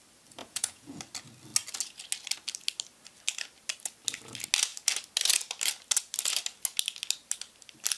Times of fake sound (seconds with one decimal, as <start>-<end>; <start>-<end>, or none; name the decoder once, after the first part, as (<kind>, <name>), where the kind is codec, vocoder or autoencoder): 0.4-1.0 (vocoder, Vocos)

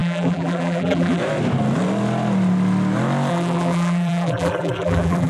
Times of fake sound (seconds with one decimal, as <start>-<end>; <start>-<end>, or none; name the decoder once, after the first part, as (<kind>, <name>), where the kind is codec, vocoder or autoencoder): 0.0-1.2 (vocoder, BigVGAN v2); 3.3-5.3

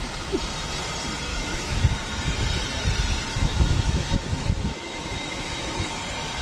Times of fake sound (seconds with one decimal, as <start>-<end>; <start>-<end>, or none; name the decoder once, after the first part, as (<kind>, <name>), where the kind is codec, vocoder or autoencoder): 1.3-1.8 (autoencoder, DAC-VAE); 3.3-6.0

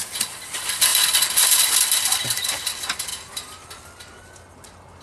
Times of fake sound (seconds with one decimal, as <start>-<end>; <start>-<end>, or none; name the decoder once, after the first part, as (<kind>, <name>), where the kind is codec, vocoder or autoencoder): 0.0-3.1 (vocoder, BigVGAN v2); 3.8-5.0

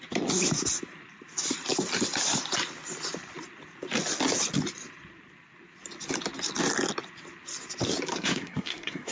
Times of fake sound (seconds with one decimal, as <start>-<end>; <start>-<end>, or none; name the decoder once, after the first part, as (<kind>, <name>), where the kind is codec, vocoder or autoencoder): 8.1-9.1 (codec, SNAC)